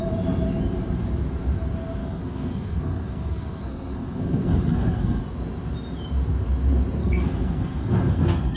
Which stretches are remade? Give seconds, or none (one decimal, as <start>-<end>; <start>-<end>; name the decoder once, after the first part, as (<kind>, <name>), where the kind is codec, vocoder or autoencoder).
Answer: 2.0-5.2 (codec, SNAC); 7.0-8.6